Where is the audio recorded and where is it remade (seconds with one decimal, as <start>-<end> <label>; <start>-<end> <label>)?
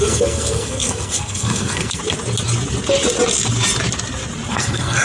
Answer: 0.0-2.0 remade; 2.0-4.5 recorded; 4.5-5.0 remade